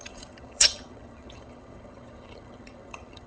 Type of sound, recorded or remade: remade